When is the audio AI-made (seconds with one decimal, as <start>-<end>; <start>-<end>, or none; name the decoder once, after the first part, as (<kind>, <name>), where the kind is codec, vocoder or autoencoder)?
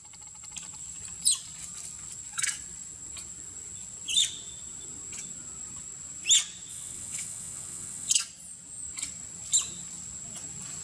6.7-8.1 (vocoder, WaveNeXt)